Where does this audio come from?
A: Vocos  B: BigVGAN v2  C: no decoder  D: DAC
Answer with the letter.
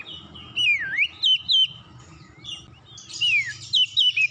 C